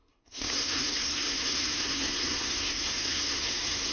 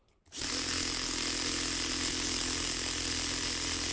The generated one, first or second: first